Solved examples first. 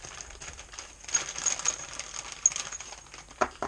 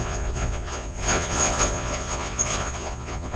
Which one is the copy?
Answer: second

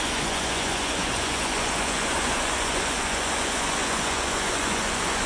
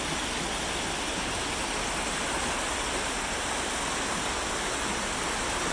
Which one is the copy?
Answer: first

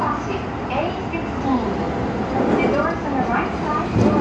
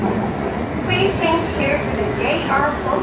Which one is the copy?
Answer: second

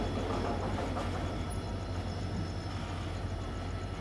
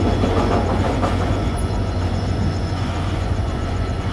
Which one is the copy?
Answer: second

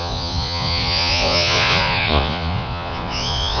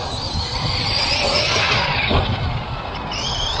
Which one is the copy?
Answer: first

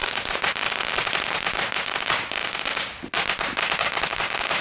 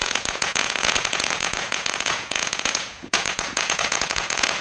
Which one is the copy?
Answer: second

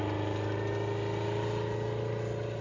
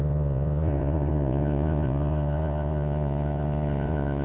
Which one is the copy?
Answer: second